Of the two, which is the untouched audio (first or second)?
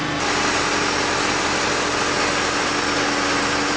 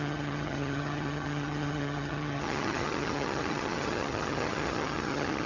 first